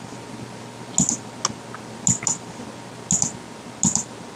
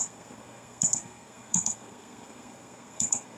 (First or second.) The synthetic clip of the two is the second